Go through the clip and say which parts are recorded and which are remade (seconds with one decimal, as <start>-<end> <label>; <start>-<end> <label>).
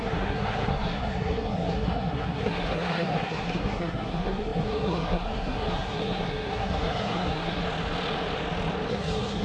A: 0.0-7.6 remade; 7.6-8.9 recorded; 8.9-9.4 remade